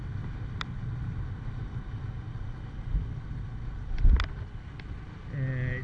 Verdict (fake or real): real